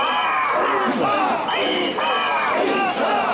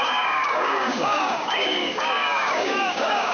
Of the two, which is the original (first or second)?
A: first